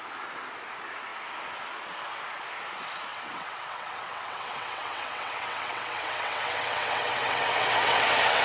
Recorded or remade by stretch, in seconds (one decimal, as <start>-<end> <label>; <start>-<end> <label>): 0.0-3.1 recorded; 3.1-8.4 remade